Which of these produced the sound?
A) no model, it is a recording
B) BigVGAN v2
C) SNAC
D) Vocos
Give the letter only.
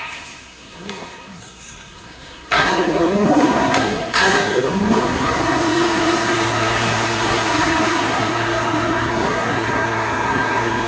C